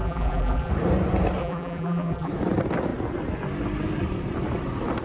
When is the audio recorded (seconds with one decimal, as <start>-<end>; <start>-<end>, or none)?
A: 0.7-1.4; 2.3-5.0